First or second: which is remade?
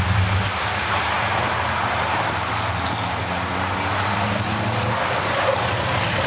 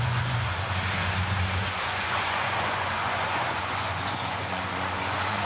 second